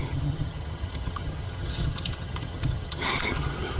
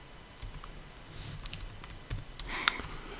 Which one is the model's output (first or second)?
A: first